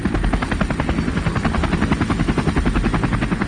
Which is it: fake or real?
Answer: real